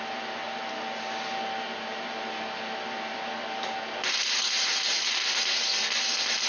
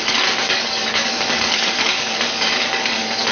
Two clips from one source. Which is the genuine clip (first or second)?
first